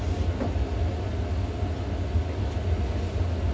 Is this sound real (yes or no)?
yes